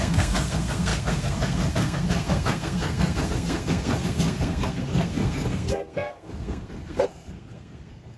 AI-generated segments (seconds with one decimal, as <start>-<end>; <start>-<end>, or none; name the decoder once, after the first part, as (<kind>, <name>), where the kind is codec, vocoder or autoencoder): 0.0-8.2 (codec, SNAC)